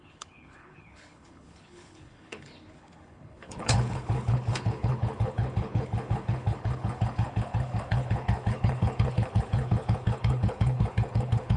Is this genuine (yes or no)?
no